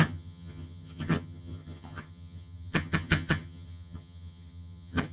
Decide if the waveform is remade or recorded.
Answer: remade